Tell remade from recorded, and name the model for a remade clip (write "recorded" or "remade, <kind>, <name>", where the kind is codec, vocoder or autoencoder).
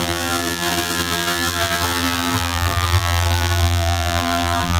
remade, vocoder, BigVGAN v2